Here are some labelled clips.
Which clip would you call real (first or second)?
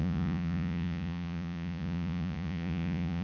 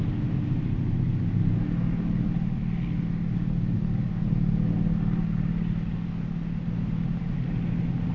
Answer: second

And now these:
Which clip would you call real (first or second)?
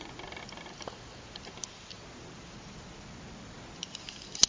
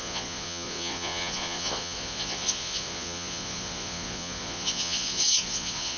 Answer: first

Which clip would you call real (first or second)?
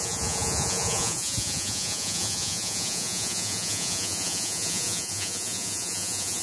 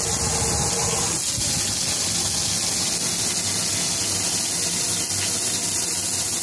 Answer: second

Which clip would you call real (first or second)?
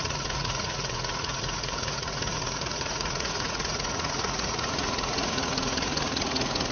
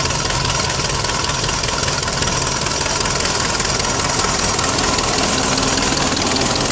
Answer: second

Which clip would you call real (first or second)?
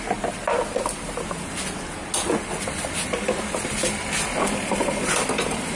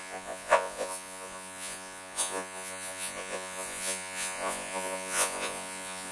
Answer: first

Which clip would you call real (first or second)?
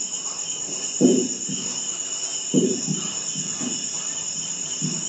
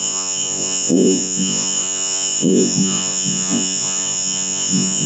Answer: first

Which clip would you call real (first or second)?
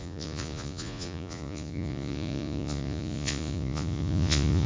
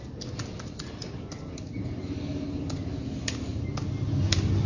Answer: second